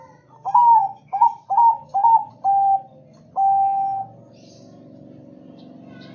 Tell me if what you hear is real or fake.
real